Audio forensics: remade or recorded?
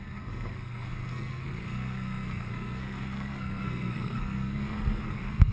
remade